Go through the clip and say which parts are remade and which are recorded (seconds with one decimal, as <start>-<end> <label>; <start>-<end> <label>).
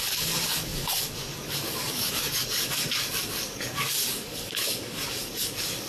0.0-5.9 remade